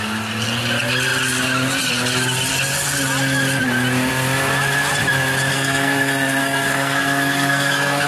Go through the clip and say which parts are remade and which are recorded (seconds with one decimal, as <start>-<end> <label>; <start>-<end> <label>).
0.0-5.5 recorded; 5.5-8.1 remade